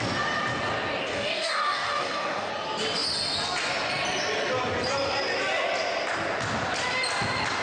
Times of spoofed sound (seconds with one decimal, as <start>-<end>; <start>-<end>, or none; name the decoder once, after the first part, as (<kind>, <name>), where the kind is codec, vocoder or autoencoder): 1.0-2.5 (codec, DAC)